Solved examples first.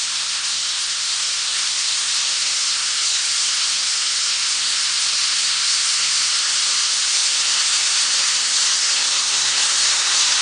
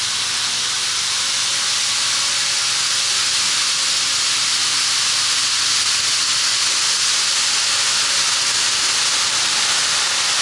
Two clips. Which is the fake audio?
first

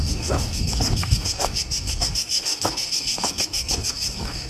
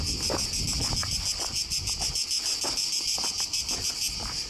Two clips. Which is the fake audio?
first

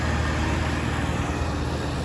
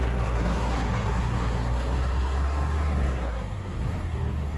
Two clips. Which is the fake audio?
second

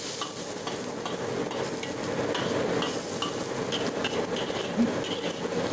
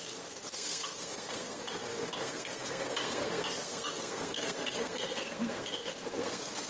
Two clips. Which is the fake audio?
second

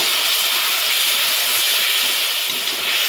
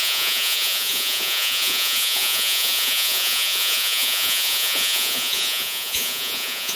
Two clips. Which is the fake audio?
second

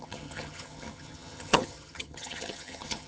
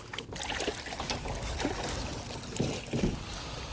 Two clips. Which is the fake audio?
first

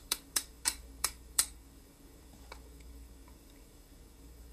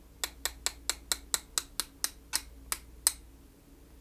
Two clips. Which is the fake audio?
first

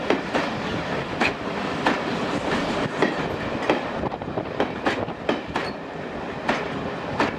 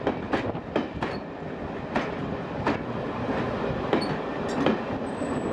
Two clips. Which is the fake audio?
first